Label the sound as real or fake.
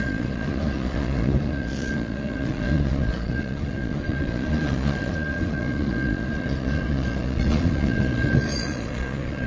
fake